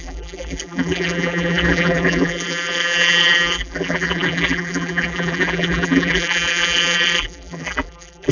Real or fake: fake